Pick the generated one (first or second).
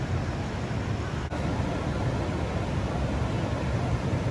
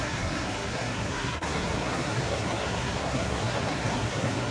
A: second